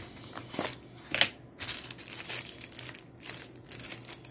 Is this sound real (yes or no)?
yes